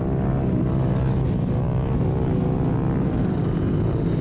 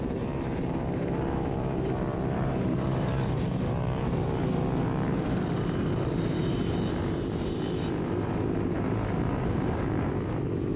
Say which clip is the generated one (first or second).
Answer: second